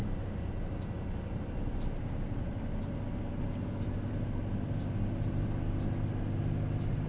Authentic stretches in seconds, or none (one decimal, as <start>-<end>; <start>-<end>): 0.0-7.1